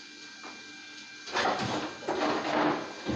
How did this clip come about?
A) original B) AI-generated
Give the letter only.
A